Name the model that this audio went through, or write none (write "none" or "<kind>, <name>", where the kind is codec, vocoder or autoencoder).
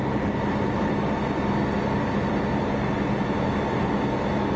none